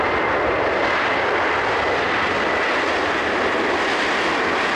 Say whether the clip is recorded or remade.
recorded